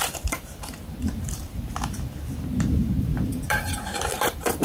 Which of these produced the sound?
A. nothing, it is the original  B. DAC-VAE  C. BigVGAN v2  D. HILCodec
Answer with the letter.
C